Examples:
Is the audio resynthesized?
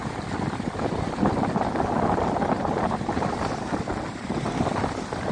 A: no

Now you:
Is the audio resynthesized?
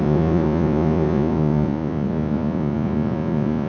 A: yes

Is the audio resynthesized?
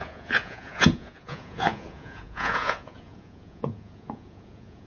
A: yes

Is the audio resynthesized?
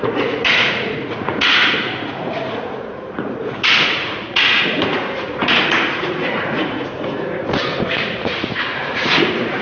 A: yes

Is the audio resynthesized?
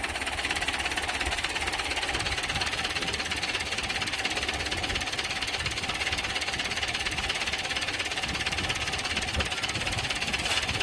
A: no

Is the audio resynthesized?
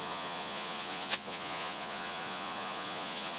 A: yes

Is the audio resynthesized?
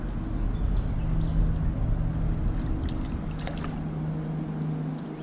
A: no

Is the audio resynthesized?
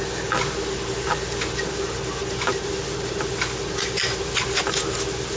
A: no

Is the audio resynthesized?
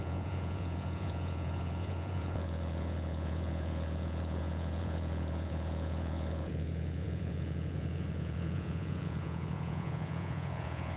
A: yes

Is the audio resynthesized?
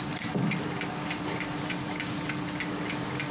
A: no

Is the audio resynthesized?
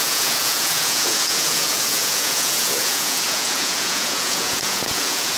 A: yes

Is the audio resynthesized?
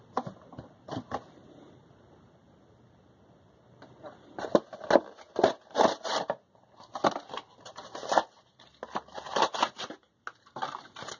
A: no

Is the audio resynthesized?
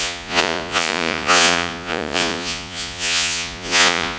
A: yes